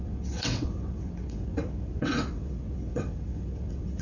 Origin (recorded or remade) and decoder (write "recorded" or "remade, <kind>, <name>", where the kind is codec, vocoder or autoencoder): remade, vocoder, WaveNeXt